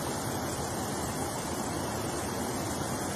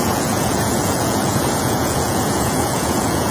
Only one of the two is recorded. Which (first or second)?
first